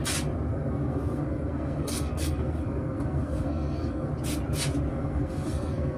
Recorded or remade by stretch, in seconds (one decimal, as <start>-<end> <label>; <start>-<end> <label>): 0.0-0.5 recorded; 0.5-4.1 remade; 4.1-4.9 recorded; 4.9-6.0 remade